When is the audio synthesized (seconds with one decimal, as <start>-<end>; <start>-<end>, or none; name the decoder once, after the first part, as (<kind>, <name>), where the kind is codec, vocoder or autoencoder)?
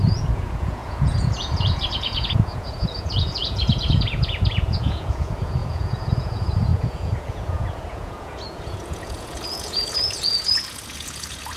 0.0-11.6 (vocoder, Vocos)